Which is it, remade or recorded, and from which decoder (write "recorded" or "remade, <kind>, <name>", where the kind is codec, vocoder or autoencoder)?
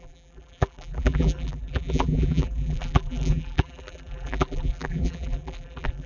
remade, vocoder, BigVGAN v2